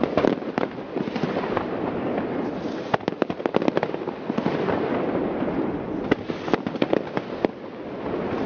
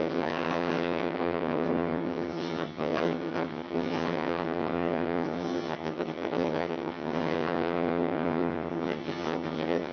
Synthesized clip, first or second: second